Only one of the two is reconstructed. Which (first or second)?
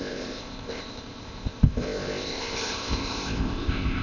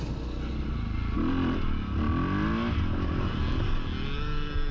first